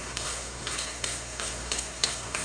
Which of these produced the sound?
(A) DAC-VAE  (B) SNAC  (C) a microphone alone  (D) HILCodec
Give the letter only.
B